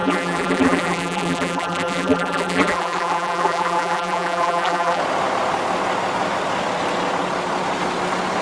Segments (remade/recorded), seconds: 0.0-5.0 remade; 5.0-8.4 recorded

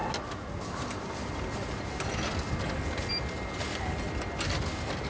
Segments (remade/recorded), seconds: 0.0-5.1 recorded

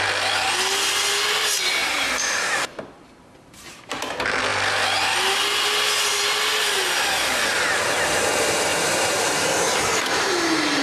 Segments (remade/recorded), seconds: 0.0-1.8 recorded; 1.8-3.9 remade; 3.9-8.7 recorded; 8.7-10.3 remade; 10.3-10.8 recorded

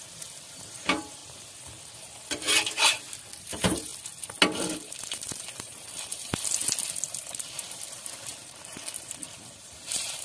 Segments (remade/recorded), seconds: 0.0-1.2 remade; 1.2-3.4 recorded; 3.4-3.9 remade; 3.9-4.6 recorded; 4.6-6.6 remade; 6.6-7.2 recorded; 7.2-10.2 remade